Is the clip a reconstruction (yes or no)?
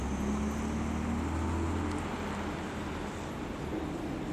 no